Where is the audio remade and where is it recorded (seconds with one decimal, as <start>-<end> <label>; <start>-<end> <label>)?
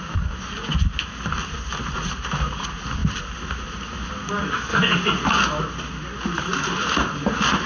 0.0-7.7 recorded